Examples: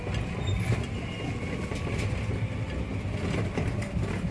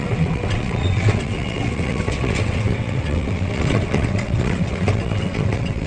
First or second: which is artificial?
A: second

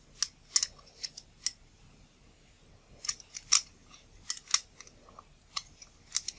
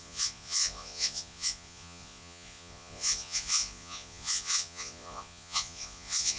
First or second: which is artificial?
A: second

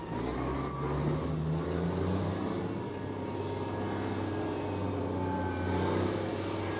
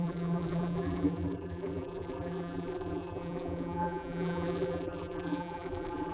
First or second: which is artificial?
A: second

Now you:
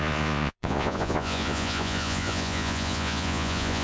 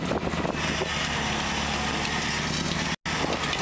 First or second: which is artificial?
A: first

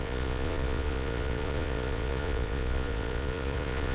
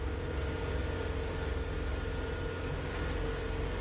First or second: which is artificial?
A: first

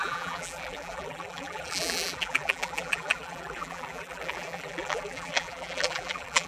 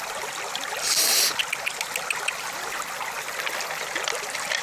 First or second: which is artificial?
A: first